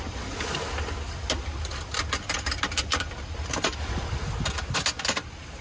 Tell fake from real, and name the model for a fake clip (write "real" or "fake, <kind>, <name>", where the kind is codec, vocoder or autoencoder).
real